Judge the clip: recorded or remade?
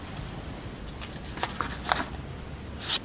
recorded